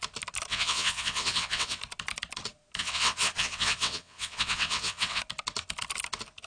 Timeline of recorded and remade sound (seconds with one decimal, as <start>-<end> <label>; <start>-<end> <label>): 0.0-0.5 recorded; 0.5-1.8 remade; 1.8-2.8 recorded; 2.8-5.2 remade; 5.2-6.5 recorded